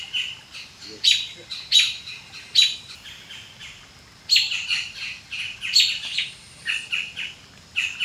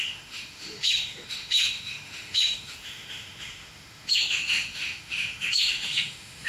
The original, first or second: first